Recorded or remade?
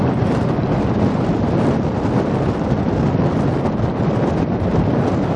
recorded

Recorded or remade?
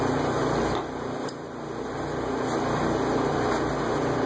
recorded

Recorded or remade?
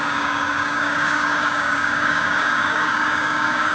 remade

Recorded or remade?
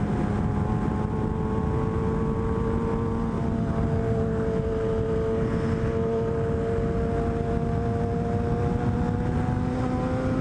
recorded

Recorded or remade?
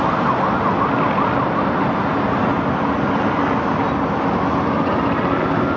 recorded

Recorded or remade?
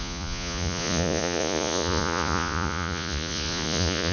remade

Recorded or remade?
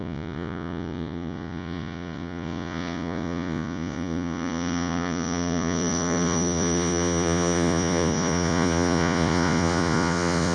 remade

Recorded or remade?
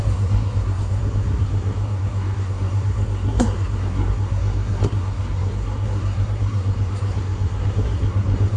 remade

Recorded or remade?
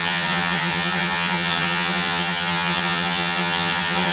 remade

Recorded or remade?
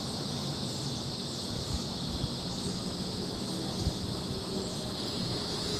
remade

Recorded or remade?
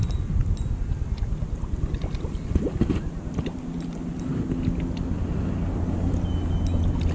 recorded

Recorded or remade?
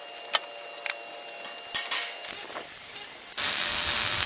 recorded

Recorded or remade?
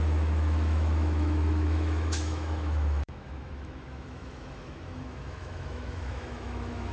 remade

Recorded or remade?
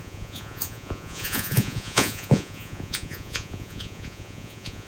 remade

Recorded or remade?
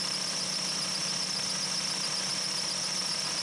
recorded